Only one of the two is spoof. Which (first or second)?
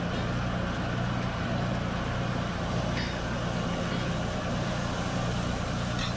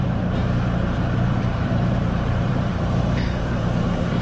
second